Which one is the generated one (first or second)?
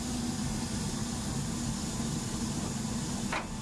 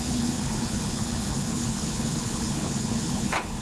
second